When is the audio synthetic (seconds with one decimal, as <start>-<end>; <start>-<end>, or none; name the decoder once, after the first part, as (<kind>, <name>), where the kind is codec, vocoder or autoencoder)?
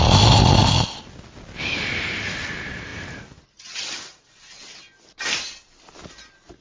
none